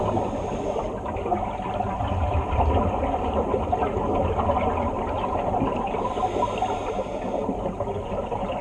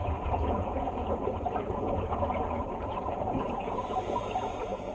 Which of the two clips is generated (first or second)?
second